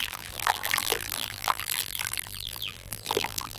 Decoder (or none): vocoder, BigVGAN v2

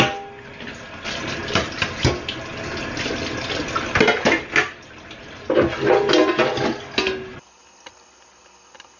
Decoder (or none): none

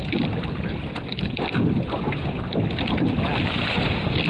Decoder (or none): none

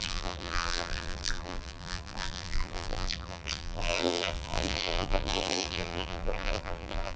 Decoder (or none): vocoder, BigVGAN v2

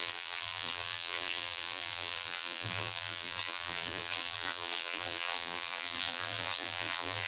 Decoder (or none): vocoder, BigVGAN v2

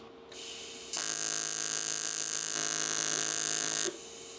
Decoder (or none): none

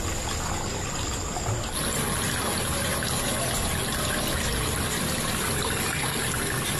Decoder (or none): none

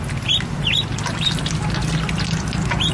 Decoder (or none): none